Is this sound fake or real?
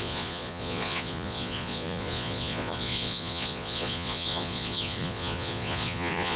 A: fake